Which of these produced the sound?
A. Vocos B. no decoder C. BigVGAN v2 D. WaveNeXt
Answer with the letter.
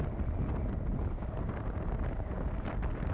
B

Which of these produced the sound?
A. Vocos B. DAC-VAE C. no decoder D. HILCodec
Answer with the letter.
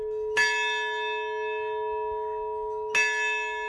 C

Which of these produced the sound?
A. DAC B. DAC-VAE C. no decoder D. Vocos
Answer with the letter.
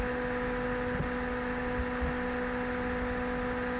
C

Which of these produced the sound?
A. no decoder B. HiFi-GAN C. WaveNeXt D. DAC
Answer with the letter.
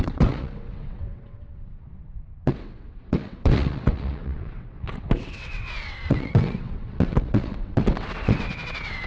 C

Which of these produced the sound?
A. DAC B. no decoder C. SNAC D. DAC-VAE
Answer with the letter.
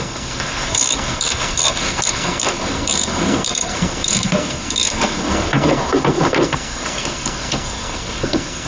C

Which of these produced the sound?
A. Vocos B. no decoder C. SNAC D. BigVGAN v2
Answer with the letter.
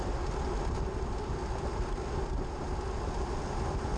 B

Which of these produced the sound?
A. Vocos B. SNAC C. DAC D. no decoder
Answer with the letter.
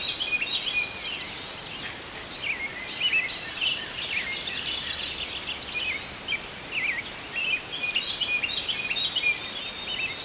D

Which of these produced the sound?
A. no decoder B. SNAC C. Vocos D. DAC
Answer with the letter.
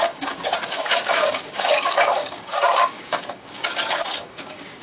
D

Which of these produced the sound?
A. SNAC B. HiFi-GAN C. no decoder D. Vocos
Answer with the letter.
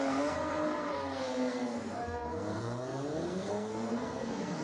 A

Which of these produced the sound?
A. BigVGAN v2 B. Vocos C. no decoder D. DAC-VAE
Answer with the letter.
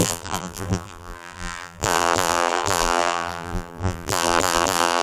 A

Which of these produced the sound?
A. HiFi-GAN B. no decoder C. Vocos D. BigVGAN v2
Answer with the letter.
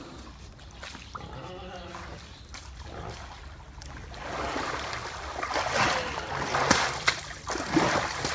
B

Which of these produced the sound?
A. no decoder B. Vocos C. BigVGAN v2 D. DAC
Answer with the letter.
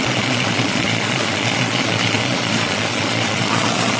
B